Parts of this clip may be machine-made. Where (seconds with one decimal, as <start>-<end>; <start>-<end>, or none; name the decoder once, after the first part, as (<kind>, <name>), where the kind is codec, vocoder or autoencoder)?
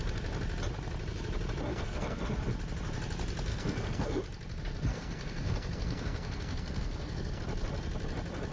1.7-2.2 (codec, SNAC); 3.5-4.2; 4.9-7.4